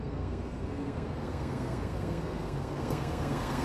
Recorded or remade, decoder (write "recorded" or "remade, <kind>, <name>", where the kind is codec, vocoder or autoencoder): remade, codec, SNAC